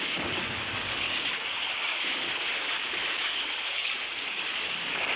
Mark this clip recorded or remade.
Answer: remade